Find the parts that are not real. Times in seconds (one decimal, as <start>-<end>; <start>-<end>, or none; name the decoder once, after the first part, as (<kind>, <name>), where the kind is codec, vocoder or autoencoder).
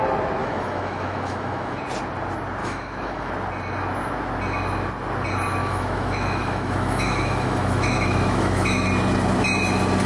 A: 0.4-1.8 (autoencoder, DAC-VAE); 2.6-3.3; 5.6-8.9